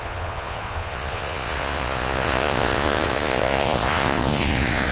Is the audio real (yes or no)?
no